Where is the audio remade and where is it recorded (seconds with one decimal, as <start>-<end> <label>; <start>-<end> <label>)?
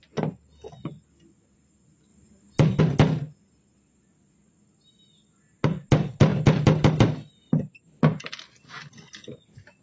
0.0-9.8 recorded